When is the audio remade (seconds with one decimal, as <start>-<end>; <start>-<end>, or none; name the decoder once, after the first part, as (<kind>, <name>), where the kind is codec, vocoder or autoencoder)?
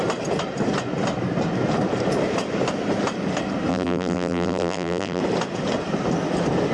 3.7-5.2 (vocoder, BigVGAN v2)